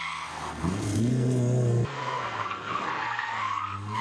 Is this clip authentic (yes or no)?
no